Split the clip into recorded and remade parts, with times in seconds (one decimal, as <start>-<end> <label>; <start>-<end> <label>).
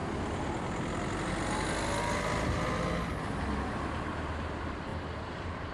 0.0-3.4 recorded; 3.4-5.7 remade